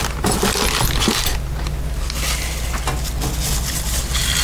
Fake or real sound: real